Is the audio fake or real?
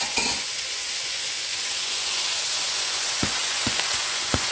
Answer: fake